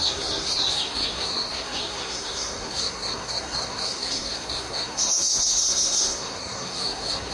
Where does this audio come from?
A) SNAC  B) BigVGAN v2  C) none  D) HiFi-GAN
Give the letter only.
A